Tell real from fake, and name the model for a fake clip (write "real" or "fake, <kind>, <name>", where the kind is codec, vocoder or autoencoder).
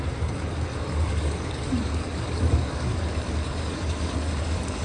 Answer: fake, codec, DAC